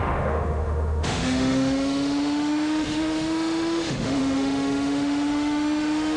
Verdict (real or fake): fake